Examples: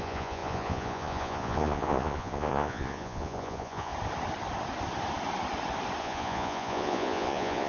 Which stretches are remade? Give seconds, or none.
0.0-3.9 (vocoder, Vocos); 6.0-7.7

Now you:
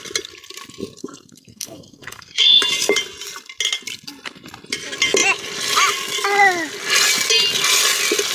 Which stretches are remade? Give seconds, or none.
1.0-2.6 (codec, SNAC)

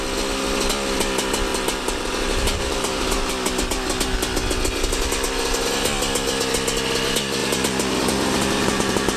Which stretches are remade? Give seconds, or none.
1.5-3.3 (vocoder, BigVGAN v2); 7.4-9.2

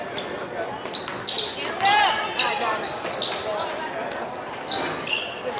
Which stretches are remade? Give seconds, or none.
none

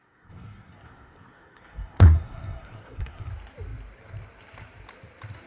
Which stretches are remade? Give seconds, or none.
0.0-3.3 (codec, SNAC)

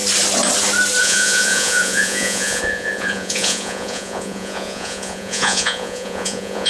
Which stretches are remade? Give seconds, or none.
1.0-6.7 (vocoder, Vocos)